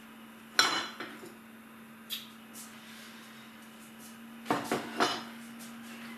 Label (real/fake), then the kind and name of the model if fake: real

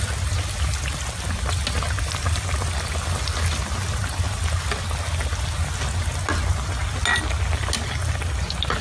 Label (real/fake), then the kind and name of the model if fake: real